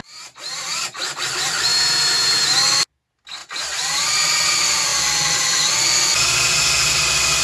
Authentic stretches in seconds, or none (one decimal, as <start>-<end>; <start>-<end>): 0.0-7.4